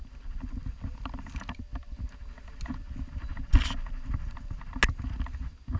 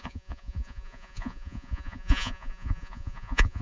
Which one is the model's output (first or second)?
second